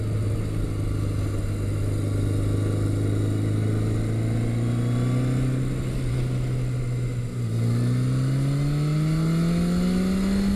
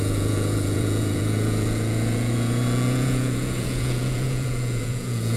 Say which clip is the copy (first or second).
second